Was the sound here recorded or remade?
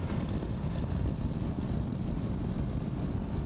recorded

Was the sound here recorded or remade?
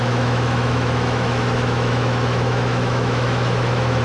remade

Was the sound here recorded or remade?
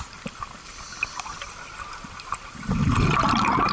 recorded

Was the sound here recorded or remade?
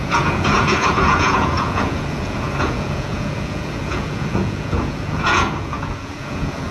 remade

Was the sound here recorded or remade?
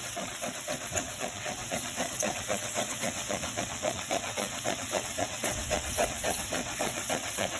remade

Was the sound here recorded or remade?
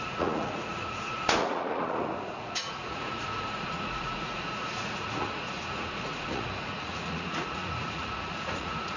remade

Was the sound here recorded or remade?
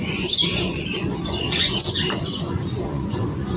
remade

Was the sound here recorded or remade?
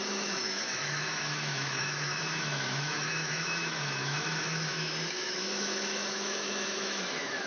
remade